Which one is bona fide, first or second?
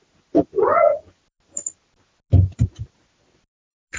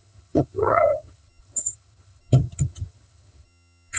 first